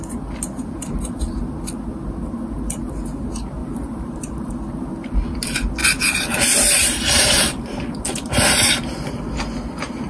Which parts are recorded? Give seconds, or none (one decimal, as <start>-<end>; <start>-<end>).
0.0-3.6; 4.5-5.8; 8.0-10.1